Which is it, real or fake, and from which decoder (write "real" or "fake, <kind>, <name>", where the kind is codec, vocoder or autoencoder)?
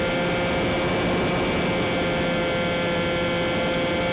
real